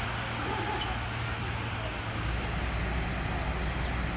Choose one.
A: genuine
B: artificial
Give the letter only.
A